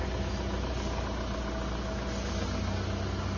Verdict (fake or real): real